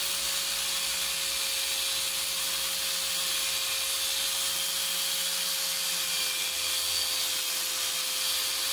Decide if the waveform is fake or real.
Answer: real